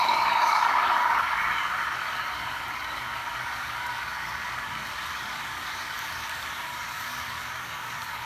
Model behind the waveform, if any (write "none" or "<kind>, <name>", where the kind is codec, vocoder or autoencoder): codec, DAC